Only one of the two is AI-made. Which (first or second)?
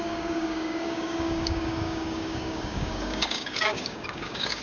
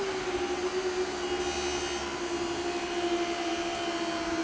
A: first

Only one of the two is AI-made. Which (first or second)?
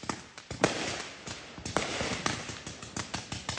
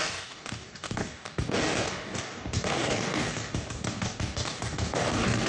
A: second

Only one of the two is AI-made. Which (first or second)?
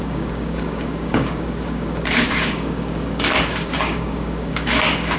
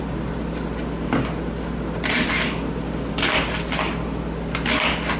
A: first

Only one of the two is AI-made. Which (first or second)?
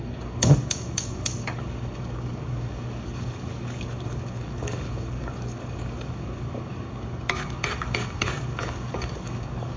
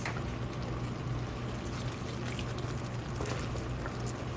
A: first